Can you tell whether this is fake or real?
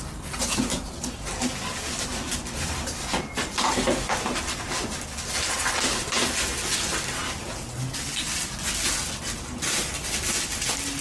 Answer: real